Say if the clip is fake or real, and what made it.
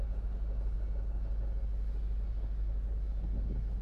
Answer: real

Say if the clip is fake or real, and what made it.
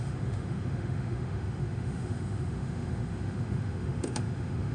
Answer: fake, autoencoder, DAC-VAE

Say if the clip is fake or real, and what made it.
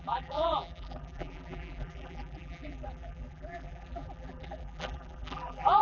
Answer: fake, vocoder, BigVGAN v2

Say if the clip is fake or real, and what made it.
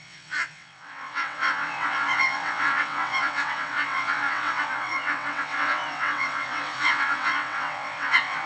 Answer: fake, vocoder, WaveNeXt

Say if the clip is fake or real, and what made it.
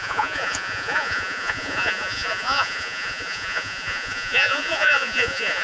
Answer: fake, vocoder, Vocos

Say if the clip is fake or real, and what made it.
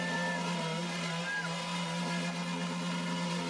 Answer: real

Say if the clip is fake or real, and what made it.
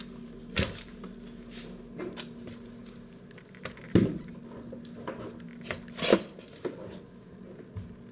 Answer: real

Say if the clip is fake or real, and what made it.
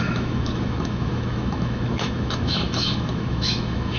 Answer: fake, autoencoder, DAC-VAE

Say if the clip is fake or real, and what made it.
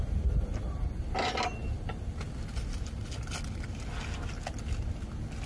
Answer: real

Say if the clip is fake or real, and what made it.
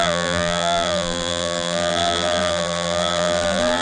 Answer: fake, vocoder, BigVGAN v2